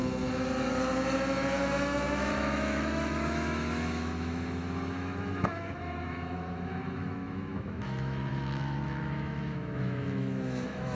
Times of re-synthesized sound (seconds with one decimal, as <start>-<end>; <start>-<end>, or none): 1.6-10.9